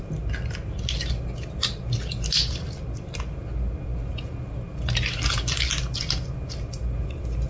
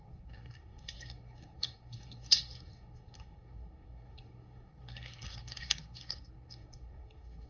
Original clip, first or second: first